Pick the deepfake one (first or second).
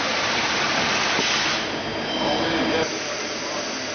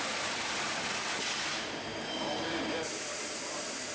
second